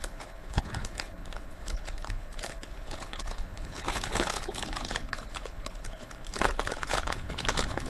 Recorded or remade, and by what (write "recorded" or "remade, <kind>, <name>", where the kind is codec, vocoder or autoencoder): remade, codec, HILCodec